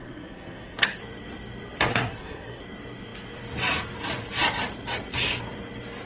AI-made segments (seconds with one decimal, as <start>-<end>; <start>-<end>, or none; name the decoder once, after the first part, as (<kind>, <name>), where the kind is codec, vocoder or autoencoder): 0.0-1.0 (codec, SNAC); 1.9-2.6

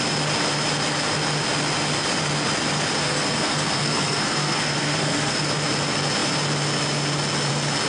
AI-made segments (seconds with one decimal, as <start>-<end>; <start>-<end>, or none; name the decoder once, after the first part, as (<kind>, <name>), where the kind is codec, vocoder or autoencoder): 3.0-5.4 (codec, SNAC)

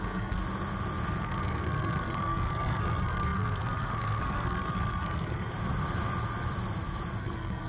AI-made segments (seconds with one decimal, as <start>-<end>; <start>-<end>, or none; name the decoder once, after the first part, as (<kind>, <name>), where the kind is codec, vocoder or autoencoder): 0.0-0.4 (codec, SNAC); 1.2-5.5; 7.2-7.7

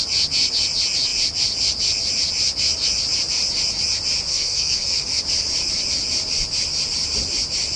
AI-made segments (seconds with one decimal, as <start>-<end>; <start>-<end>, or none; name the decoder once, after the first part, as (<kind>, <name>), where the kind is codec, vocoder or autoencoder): 4.3-5.2 (codec, SNAC)

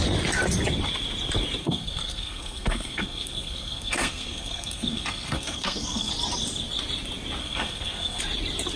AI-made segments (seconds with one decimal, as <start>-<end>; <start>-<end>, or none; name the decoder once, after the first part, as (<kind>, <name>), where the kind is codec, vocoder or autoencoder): 1.6-6.1 (codec, SNAC); 7.4-8.2

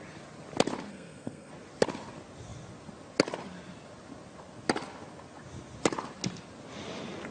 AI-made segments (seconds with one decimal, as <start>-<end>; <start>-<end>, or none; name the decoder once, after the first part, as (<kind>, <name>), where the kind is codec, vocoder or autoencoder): 0.9-1.5 (codec, SNAC)

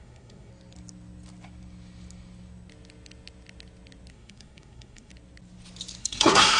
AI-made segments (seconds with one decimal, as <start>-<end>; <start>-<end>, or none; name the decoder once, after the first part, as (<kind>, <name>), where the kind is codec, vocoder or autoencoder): 0.0-0.5 (codec, SNAC); 4.1-5.1; 6.0-6.6